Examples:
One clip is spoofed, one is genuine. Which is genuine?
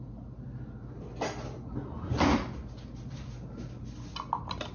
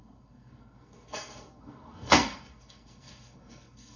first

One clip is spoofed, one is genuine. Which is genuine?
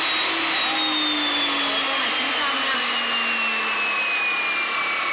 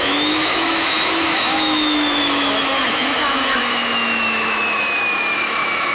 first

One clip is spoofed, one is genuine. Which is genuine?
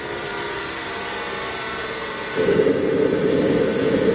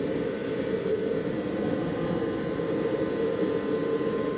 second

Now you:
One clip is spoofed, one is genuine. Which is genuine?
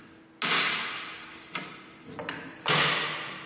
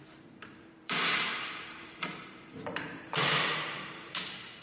first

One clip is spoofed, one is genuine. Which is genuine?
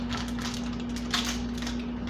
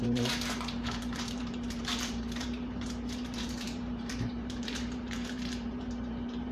first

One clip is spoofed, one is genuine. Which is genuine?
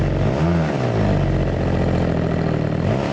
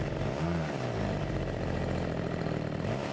first